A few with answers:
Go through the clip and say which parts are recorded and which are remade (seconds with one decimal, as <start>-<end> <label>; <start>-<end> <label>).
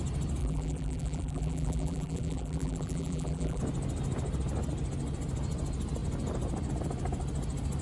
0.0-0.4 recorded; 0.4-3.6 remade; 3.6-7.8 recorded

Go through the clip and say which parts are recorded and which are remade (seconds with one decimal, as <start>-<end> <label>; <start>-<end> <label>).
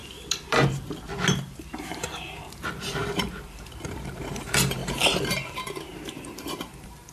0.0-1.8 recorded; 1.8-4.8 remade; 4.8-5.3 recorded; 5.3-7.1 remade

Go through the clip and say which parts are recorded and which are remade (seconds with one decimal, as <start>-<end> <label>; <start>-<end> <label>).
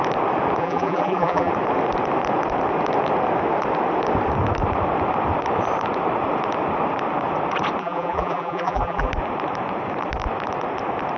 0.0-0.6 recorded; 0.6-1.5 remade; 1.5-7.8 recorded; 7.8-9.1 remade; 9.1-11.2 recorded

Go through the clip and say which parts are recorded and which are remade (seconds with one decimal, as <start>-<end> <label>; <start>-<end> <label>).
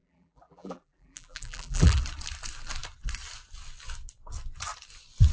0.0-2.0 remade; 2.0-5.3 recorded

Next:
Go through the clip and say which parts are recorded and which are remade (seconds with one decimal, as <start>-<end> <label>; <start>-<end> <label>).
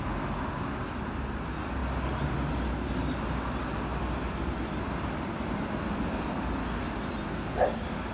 0.0-3.9 recorded; 3.9-6.4 remade; 6.4-8.1 recorded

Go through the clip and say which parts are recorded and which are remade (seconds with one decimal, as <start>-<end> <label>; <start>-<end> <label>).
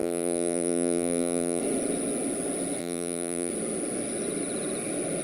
0.0-1.6 remade; 1.6-2.8 recorded; 2.8-3.5 remade; 3.5-5.2 recorded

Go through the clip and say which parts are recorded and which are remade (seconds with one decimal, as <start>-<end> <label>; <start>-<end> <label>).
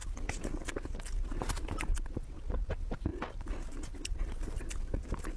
0.0-5.4 recorded